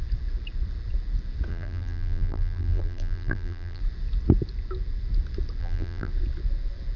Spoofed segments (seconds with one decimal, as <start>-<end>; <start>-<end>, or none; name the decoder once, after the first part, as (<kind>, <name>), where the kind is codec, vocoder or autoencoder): 1.5-3.8 (vocoder, BigVGAN v2); 5.6-6.1